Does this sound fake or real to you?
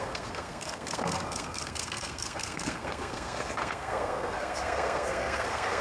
fake